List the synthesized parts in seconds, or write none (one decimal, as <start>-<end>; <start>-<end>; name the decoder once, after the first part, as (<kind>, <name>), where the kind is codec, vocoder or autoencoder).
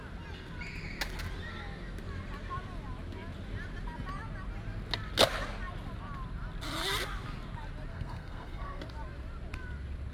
7.9-8.8 (codec, SNAC)